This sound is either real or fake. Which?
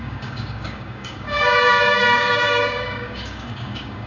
fake